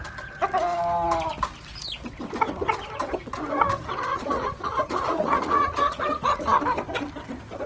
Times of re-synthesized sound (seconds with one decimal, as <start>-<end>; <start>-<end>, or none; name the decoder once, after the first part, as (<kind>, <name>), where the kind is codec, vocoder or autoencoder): 4.1-6.6 (vocoder, Vocos)